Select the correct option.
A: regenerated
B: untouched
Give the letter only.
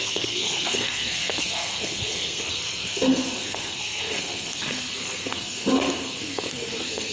A